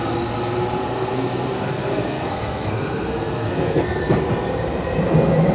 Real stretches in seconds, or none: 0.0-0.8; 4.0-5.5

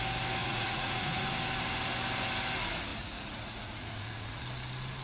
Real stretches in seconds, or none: 0.0-0.4; 1.3-2.9; 4.4-5.0